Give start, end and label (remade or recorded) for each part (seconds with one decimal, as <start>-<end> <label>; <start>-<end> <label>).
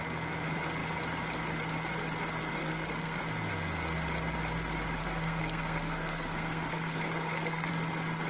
0.0-2.6 recorded; 2.6-3.2 remade; 3.2-5.0 recorded; 5.0-7.7 remade; 7.7-8.3 recorded